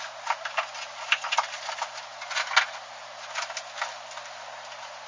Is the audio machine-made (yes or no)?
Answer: no